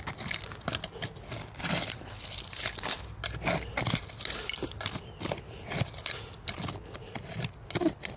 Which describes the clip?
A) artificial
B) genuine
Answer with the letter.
B